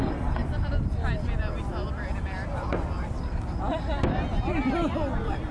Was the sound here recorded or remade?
recorded